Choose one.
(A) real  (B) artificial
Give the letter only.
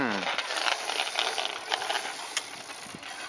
A